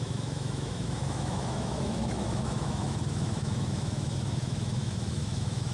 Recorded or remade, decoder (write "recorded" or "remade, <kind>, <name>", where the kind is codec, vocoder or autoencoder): remade, autoencoder, DAC-VAE